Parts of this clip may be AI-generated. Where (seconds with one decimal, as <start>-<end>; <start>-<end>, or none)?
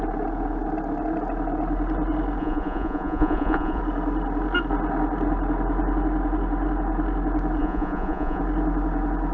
2.4-3.8; 7.6-8.4